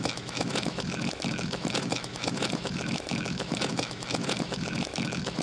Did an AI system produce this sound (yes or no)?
yes